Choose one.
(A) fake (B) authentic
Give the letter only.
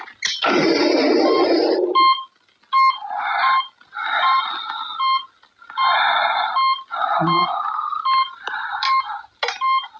B